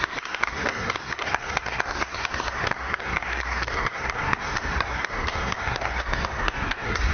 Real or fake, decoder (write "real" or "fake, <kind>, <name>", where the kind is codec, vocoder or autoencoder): fake, codec, SNAC